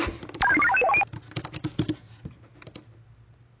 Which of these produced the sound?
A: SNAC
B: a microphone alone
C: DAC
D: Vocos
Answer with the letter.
B